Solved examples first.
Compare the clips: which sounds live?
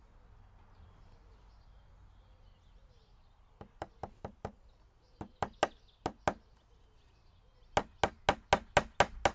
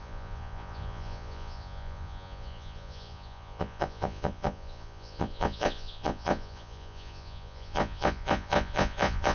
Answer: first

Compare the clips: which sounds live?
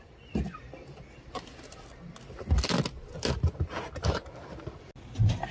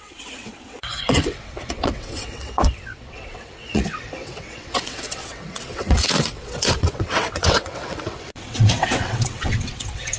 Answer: first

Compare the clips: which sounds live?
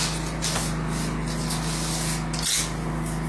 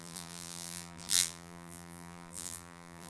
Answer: first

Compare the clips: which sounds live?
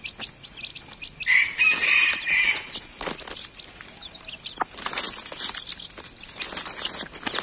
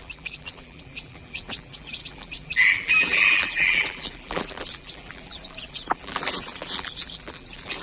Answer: first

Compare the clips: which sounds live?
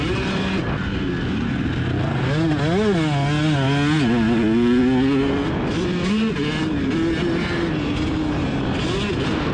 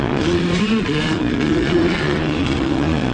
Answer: first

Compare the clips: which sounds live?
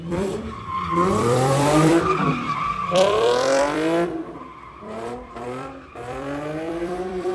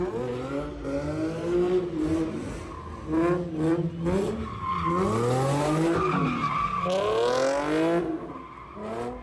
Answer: second